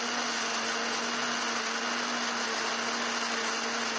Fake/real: real